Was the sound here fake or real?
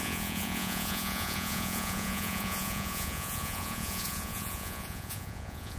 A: fake